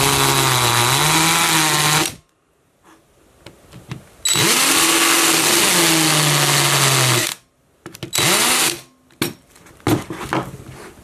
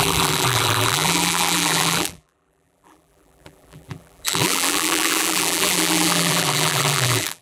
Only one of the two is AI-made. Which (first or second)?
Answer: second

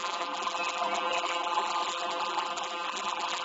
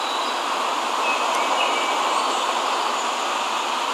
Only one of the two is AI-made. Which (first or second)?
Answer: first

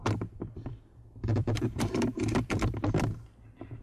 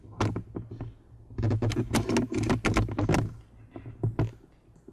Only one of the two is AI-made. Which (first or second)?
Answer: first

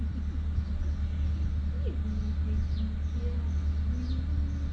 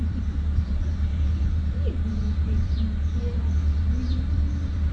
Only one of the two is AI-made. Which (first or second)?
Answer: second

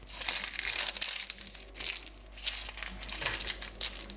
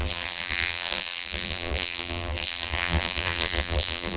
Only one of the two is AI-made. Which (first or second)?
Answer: second